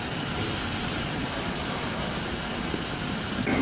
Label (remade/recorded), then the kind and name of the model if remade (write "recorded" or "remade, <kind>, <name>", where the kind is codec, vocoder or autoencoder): recorded